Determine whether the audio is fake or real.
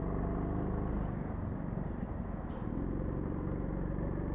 real